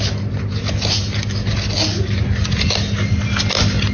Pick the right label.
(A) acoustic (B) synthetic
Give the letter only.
A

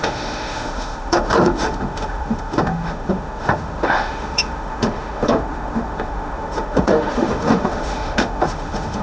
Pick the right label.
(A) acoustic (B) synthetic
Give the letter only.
B